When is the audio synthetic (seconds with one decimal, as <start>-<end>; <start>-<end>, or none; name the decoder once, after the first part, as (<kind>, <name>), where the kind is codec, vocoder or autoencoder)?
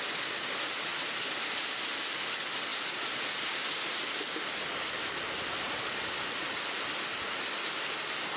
none